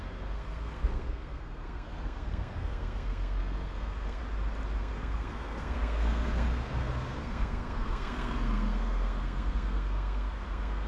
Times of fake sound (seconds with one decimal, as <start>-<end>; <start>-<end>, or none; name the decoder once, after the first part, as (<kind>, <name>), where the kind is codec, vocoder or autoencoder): 0.0-4.2 (codec, SNAC); 4.8-10.9